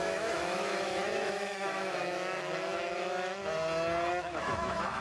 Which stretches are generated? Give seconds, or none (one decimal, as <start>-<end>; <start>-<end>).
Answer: 0.0-3.4; 4.1-5.0